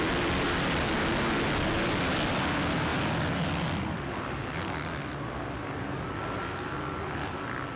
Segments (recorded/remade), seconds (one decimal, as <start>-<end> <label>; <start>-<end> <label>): 0.0-7.8 recorded